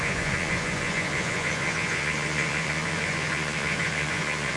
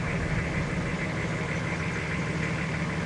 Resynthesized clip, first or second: first